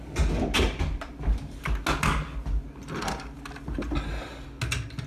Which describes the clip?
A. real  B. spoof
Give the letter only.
A